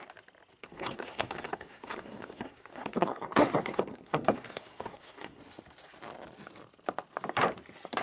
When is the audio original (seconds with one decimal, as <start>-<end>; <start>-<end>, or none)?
0.0-0.6; 5.4-8.0